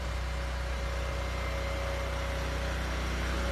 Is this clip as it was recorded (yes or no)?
yes